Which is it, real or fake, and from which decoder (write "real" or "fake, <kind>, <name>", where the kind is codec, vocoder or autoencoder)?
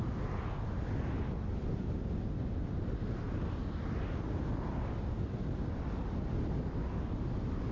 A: real